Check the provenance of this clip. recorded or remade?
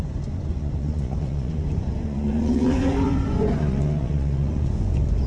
remade